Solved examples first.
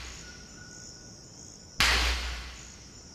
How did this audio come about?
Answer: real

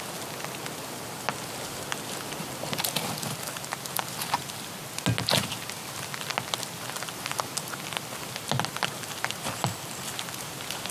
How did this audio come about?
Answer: real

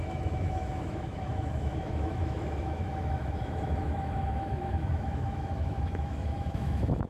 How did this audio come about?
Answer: fake